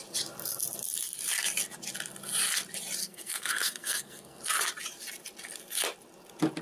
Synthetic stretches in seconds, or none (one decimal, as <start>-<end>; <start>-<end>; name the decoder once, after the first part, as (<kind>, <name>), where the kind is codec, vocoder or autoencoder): 3.0-4.4 (codec, SNAC)